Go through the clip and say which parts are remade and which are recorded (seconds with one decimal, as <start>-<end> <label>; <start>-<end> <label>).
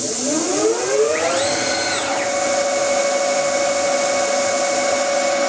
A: 0.0-5.5 recorded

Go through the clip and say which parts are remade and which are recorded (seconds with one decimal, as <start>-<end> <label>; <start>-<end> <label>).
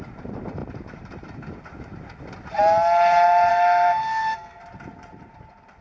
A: 0.0-3.5 recorded; 3.5-4.6 remade; 4.6-5.8 recorded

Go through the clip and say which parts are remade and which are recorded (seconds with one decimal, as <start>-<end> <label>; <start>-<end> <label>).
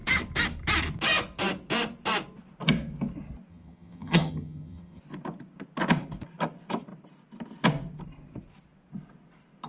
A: 0.0-3.5 recorded; 3.5-5.0 remade; 5.0-9.7 recorded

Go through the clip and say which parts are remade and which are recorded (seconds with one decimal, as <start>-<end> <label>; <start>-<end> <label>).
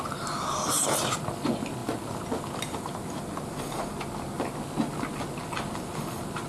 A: 0.0-6.5 recorded